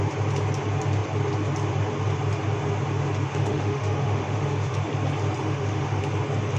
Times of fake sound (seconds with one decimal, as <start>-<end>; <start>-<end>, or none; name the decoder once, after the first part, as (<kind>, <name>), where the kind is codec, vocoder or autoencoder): 3.3-4.7 (autoencoder, DAC-VAE); 5.4-6.0